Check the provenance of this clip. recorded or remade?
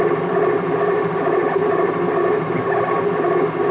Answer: recorded